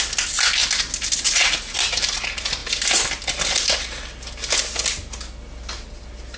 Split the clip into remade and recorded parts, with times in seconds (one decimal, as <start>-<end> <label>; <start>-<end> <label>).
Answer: 0.0-6.4 recorded